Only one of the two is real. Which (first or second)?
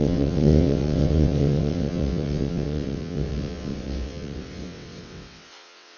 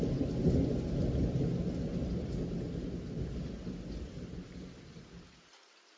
second